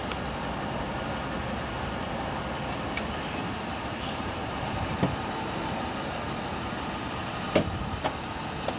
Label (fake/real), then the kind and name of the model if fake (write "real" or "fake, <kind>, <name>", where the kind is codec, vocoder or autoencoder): real